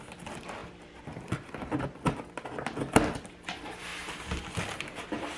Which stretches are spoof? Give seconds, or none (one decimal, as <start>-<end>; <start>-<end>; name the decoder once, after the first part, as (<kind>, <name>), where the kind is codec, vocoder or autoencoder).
none